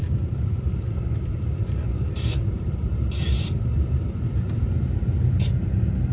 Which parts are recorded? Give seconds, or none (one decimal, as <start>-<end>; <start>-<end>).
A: 3.7-6.1